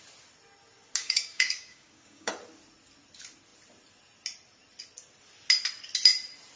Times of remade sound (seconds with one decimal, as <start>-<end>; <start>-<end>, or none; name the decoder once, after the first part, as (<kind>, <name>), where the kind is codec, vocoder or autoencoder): 1.0-2.3 (codec, DAC)